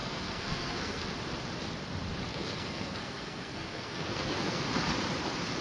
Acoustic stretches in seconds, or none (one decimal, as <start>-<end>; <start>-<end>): 1.0-2.3; 4.6-5.6